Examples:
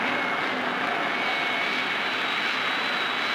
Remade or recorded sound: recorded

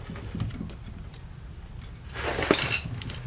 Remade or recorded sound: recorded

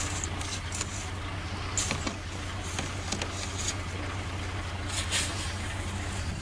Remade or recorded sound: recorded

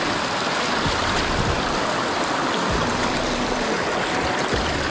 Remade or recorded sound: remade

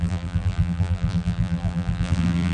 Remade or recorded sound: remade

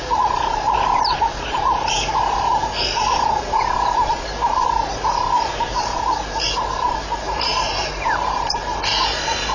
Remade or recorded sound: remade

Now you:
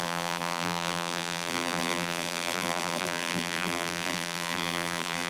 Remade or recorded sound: remade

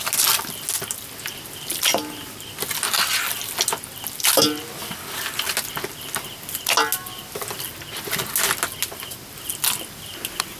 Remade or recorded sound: recorded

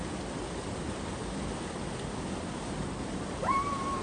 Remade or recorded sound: recorded